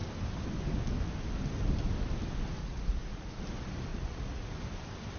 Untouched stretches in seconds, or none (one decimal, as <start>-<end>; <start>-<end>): 0.0-2.6; 3.4-3.9; 4.5-5.2